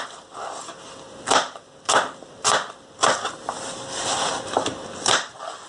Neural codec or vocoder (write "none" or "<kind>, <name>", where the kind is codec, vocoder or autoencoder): none